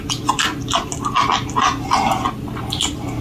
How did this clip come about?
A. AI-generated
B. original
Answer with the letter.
B